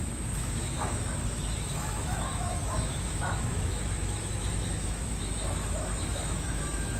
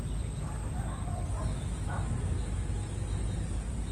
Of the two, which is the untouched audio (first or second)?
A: second